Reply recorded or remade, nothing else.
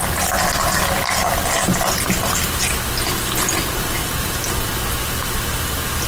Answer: recorded